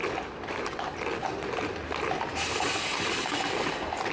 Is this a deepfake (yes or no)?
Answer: no